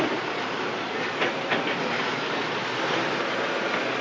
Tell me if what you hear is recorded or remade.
recorded